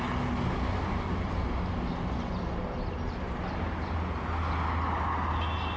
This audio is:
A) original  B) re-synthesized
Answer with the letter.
A